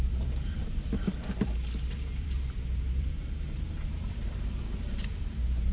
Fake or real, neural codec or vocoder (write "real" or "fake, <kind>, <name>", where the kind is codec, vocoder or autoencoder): fake, vocoder, BigVGAN v2